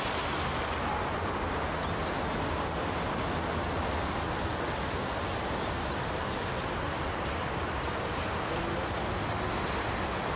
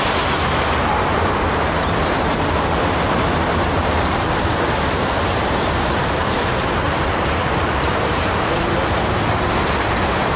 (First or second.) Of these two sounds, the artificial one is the second